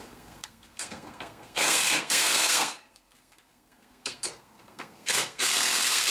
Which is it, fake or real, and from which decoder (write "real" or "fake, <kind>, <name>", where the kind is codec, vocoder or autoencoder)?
fake, codec, SNAC